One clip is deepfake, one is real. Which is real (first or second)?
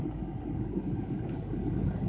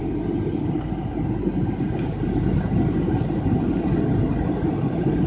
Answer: second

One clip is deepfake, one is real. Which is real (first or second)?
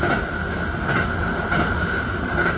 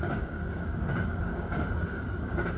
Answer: first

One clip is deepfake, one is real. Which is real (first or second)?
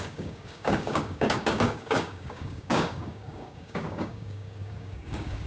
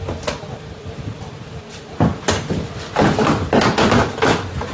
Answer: second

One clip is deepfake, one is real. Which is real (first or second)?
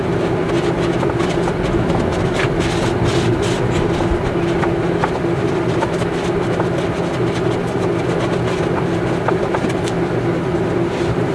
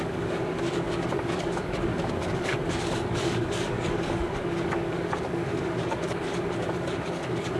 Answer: first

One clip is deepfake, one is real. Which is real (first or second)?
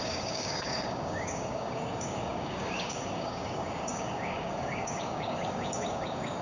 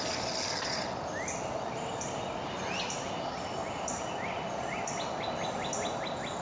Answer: second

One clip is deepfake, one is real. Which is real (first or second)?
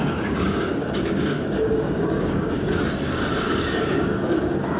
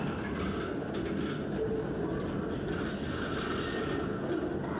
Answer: second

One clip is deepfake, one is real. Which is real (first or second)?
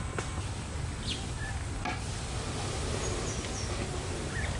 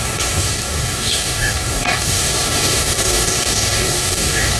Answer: first